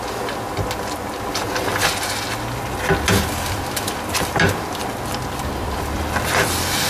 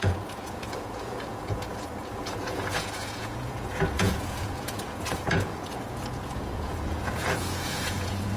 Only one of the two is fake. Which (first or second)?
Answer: second